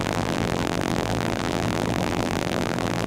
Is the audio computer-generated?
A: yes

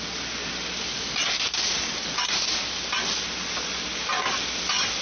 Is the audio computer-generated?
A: no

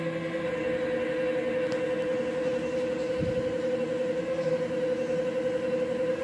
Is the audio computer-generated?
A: no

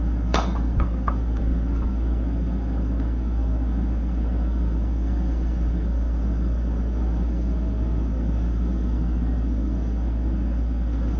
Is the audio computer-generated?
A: yes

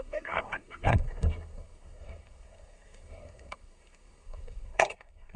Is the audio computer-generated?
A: yes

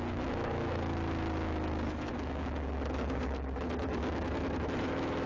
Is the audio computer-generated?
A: yes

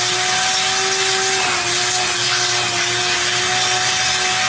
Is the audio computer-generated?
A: no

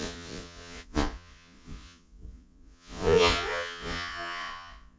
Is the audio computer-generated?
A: yes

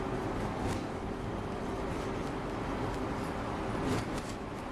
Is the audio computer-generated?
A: no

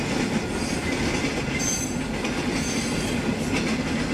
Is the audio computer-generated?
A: no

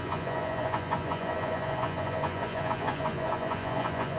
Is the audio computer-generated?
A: yes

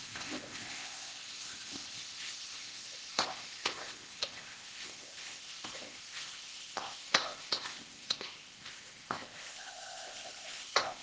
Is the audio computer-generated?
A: yes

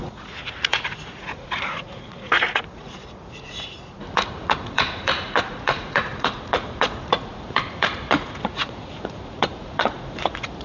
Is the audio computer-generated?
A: yes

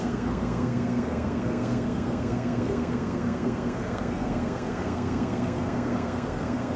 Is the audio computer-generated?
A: yes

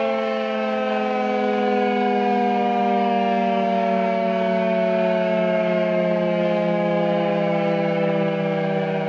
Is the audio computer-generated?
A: yes